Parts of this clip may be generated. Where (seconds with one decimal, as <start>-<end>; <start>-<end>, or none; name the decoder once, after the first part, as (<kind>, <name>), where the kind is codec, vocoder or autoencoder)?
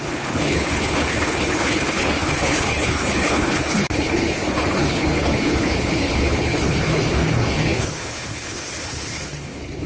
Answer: 0.0-9.9 (codec, HILCodec)